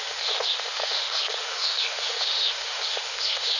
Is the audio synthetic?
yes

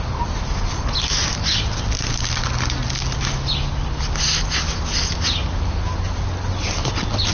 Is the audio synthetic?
no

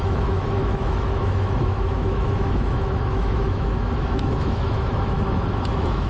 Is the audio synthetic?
yes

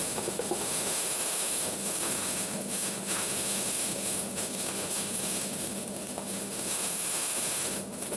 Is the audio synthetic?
yes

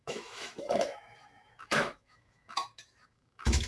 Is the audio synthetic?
yes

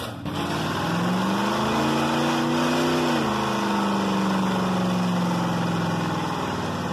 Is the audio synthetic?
no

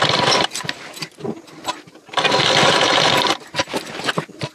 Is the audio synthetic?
no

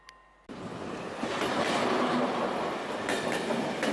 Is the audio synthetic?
no